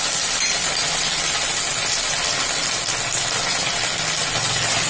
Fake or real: real